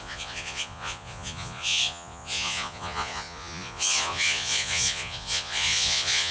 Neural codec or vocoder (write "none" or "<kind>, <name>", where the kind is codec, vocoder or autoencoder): vocoder, Vocos